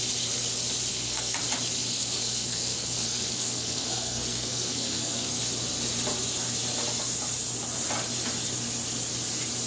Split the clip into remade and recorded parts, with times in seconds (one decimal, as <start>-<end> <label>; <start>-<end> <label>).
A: 0.0-0.9 recorded; 0.9-1.4 remade; 1.4-1.9 recorded; 1.9-5.4 remade; 5.4-9.7 recorded

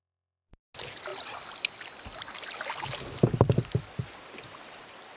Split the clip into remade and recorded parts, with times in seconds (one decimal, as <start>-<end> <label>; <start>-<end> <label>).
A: 0.0-5.2 recorded

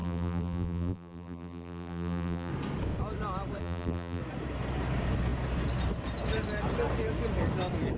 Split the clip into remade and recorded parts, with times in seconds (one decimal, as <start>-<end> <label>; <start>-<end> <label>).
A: 0.0-2.5 remade; 2.5-3.6 recorded; 3.6-4.2 remade; 4.2-8.0 recorded

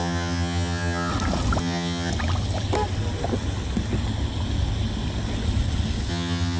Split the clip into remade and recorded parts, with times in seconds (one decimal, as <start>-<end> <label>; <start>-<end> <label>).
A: 0.0-1.1 remade; 1.1-1.6 recorded; 1.6-2.1 remade; 2.1-6.1 recorded; 6.1-6.6 remade

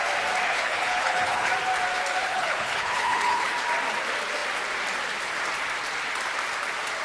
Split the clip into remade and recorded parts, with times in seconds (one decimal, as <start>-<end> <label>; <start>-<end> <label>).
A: 0.0-0.5 recorded; 0.5-1.5 remade; 1.5-2.2 recorded; 2.2-3.5 remade; 3.5-7.0 recorded

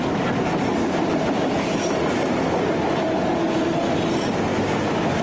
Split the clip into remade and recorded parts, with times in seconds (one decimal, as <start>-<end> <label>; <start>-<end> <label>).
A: 0.0-5.2 recorded

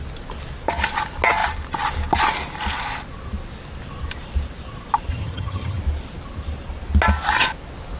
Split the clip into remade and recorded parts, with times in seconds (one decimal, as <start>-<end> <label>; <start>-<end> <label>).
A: 0.0-5.1 recorded; 5.1-5.8 remade; 5.8-8.0 recorded

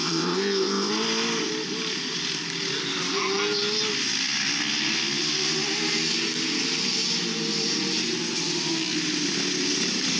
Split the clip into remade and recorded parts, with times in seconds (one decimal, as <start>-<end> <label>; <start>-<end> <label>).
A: 0.0-0.9 remade; 0.9-10.2 recorded